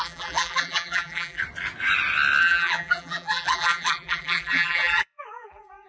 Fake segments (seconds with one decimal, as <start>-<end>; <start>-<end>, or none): 0.0-1.4; 2.4-5.9